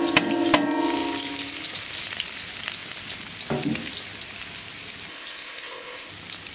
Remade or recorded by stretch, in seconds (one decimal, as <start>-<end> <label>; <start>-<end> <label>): 0.0-5.1 recorded; 5.1-6.1 remade; 6.1-6.5 recorded